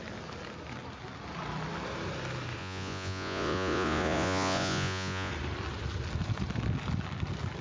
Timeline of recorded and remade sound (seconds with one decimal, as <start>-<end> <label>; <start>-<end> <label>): 0.0-2.6 recorded; 2.6-5.3 remade; 5.3-7.6 recorded